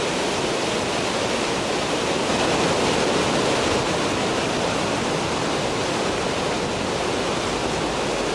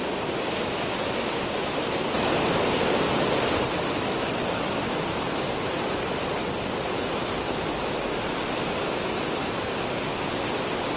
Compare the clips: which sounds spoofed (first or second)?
second